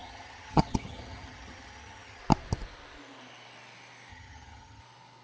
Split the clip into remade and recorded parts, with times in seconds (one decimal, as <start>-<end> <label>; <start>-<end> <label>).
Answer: 0.0-2.2 remade; 2.2-4.1 recorded; 4.1-4.8 remade; 4.8-5.2 recorded